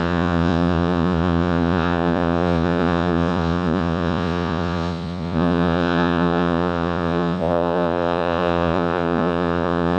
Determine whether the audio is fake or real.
fake